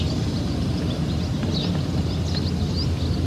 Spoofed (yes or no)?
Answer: no